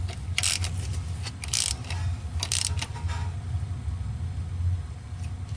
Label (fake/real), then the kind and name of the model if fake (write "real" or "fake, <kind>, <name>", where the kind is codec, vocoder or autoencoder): real